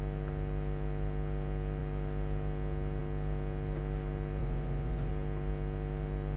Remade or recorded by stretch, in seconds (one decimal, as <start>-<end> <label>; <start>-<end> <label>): 0.0-4.4 recorded; 4.4-5.1 remade; 5.1-6.4 recorded